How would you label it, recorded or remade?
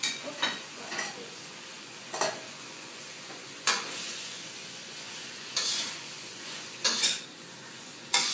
remade